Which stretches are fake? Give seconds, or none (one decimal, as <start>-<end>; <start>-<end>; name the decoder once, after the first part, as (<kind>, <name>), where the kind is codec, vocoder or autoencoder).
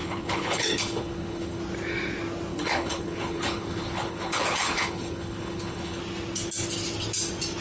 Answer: 0.0-1.6 (codec, HILCodec); 2.5-6.0